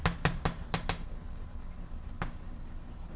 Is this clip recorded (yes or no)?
yes